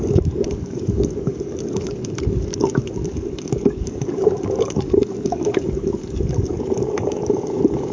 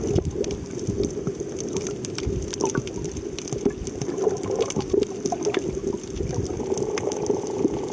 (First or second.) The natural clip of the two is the second